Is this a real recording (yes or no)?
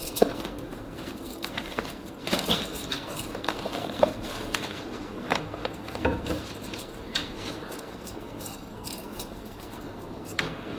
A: no